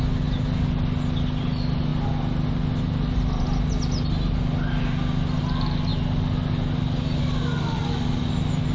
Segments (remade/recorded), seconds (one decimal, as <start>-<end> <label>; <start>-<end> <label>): 0.0-8.7 recorded